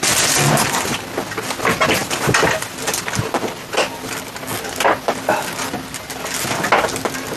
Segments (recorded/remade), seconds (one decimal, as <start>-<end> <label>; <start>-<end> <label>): 0.0-7.4 recorded

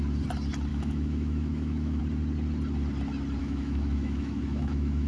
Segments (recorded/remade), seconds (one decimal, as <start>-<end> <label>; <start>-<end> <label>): 0.0-0.7 recorded; 0.7-2.0 remade; 2.0-3.4 recorded; 3.4-5.1 remade

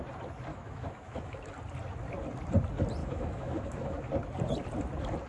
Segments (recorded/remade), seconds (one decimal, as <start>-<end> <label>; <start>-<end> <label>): 0.0-0.5 recorded; 0.5-1.5 remade; 1.5-3.0 recorded; 3.0-4.1 remade; 4.1-5.3 recorded